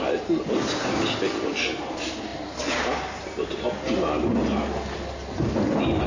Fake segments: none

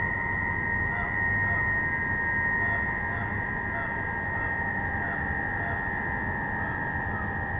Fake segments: none

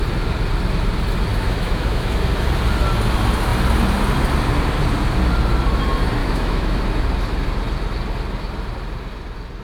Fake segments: 1.3-2.3 (autoencoder, DAC-VAE); 6.2-6.8

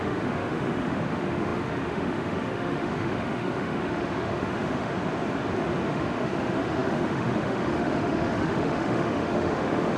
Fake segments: 0.0-4.9 (autoencoder, DAC-VAE); 5.9-10.0

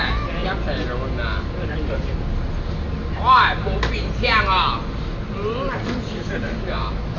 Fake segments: none

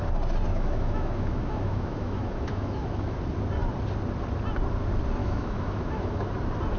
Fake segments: 0.5-3.2 (autoencoder, DAC-VAE); 5.2-6.3

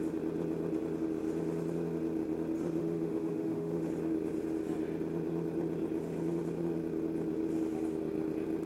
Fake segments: 2.8-3.9 (autoencoder, DAC-VAE)

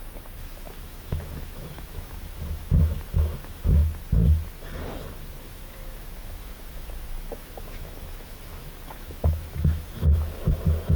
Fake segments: 0.0-3.8 (autoencoder, DAC-VAE); 5.4-11.0